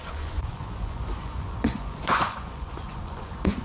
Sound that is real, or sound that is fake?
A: fake